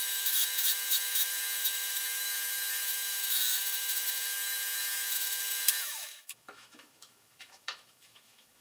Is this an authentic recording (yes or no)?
no